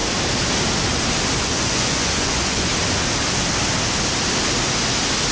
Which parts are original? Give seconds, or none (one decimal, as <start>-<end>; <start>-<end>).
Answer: 0.0-1.4; 2.7-5.3